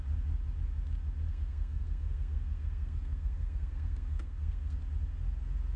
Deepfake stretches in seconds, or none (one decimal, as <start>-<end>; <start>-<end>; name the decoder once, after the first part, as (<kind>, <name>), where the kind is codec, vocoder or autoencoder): 1.3-4.8 (codec, SNAC)